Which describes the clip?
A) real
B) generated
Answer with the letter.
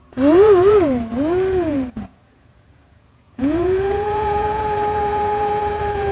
B